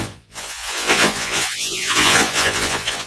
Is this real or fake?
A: fake